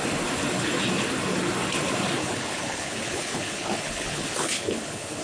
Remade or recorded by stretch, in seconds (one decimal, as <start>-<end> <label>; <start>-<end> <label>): 0.0-2.2 recorded; 2.2-5.2 remade